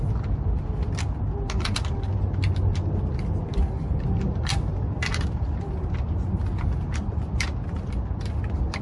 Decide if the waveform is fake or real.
real